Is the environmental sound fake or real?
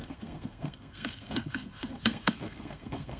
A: fake